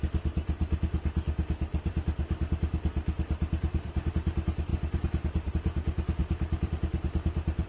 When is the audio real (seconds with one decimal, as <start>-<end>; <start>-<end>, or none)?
0.0-1.7; 4.1-4.7; 5.5-6.2

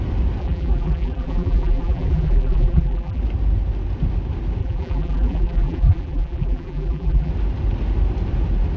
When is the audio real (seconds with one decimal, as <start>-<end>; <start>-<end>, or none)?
0.0-0.4; 3.2-4.6; 7.3-8.8

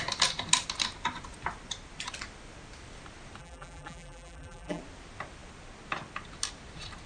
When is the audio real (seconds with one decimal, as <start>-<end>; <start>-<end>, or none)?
0.0-3.4; 4.8-7.1

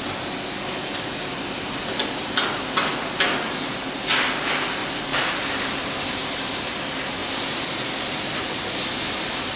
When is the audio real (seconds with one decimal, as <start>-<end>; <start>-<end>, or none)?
0.0-4.8; 6.5-7.2

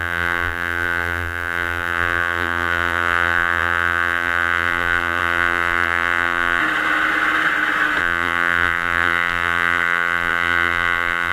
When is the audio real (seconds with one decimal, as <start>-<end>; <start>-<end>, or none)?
6.6-8.0